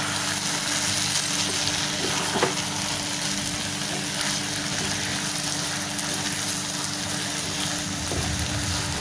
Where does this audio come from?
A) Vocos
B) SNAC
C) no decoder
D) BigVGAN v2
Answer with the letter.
C